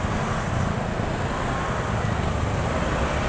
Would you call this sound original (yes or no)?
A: yes